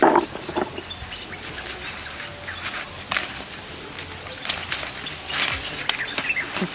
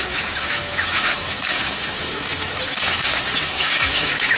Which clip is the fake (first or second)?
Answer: second